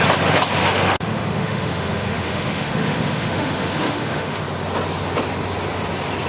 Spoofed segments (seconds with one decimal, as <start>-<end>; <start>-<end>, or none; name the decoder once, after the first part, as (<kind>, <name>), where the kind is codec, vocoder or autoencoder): 0.6-4.4 (autoencoder, DAC-VAE)